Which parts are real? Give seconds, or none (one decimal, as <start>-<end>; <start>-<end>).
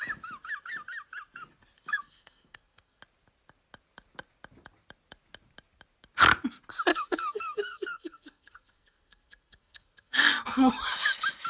0.0-1.9; 3.0-6.9; 10.7-11.5